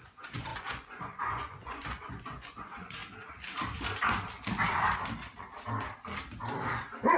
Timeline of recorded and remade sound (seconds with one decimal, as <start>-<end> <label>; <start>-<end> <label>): 0.0-3.0 remade; 3.0-6.7 recorded; 6.7-7.2 remade